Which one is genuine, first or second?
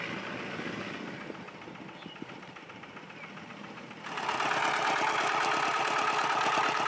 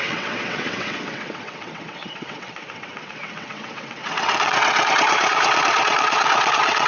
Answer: first